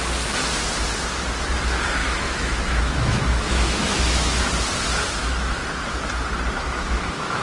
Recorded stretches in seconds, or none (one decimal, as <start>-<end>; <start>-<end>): 0.0-2.0; 4.4-5.2; 6.0-6.6